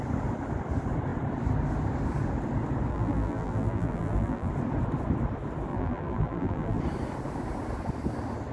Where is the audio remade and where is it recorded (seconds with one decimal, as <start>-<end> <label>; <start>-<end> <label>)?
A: 0.0-2.9 recorded; 2.9-4.5 remade; 4.5-5.7 recorded; 5.7-6.8 remade; 6.8-8.5 recorded